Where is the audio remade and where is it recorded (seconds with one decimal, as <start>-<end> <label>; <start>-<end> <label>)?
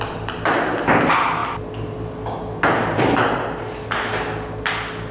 0.0-5.1 recorded